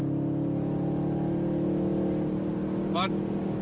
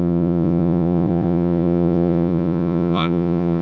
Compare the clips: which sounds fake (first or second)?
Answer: second